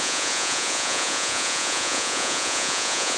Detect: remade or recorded remade